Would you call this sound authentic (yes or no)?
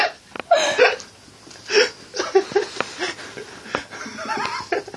yes